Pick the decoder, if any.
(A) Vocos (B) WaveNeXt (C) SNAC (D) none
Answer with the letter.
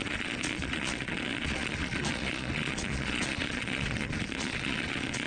A